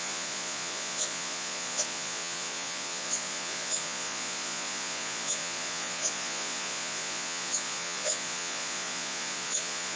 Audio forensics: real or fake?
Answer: fake